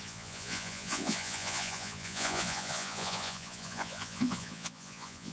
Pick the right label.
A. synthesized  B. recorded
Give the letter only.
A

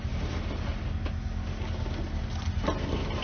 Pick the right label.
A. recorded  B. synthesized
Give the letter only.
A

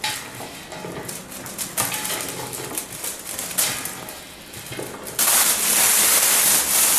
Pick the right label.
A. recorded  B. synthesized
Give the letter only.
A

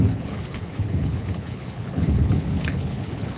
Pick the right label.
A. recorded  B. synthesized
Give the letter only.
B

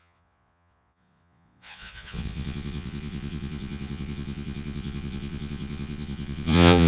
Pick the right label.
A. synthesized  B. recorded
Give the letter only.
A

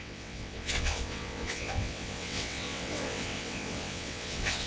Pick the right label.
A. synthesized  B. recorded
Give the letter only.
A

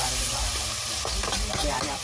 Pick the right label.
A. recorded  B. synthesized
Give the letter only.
A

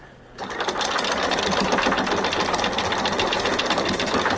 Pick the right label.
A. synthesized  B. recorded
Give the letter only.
B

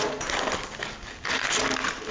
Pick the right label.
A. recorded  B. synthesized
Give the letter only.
A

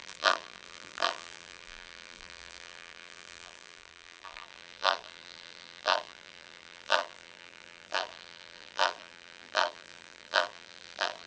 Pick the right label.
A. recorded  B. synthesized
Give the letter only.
B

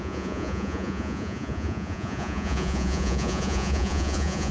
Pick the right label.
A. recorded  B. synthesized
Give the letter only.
B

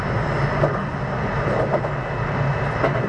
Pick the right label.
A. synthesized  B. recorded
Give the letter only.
B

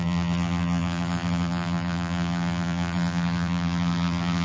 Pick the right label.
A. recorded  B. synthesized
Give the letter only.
B